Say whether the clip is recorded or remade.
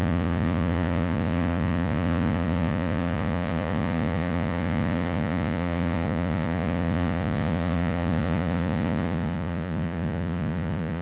remade